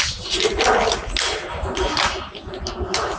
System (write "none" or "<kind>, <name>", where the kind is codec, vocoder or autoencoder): none